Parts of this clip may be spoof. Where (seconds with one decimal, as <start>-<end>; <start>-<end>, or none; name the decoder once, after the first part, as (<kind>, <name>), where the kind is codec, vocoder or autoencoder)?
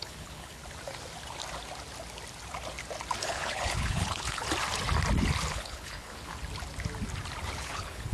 0.0-0.6 (codec, HILCodec); 3.2-4.4; 5.5-6.3; 7.4-8.1